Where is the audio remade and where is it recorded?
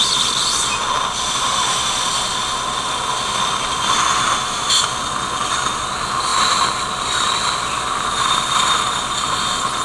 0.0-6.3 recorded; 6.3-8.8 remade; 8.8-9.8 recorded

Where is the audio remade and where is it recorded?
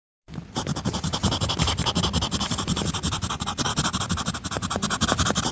0.0-3.3 recorded; 3.3-3.7 remade; 3.7-5.5 recorded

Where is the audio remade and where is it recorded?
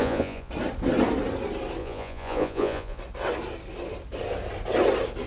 0.0-0.5 remade; 0.5-1.8 recorded; 1.8-3.0 remade; 3.0-5.3 recorded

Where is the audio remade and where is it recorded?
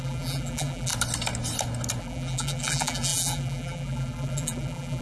0.0-0.9 remade; 0.9-2.0 recorded; 2.0-5.0 remade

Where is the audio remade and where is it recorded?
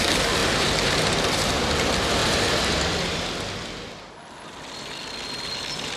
0.0-0.4 recorded; 0.4-1.7 remade; 1.7-6.0 recorded